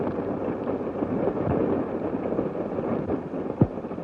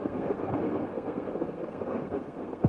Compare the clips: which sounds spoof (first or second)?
second